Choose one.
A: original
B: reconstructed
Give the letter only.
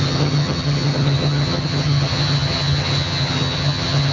B